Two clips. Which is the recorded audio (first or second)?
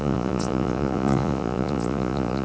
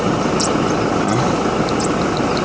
second